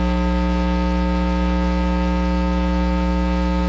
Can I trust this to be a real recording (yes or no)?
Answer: yes